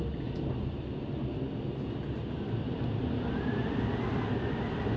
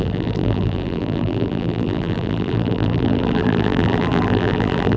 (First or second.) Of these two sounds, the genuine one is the first